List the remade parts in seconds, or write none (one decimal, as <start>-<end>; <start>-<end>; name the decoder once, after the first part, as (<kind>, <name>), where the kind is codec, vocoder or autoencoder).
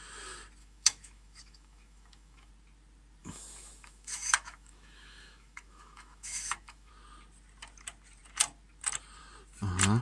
0.6-2.5 (autoencoder, DAC-VAE); 3.2-6.9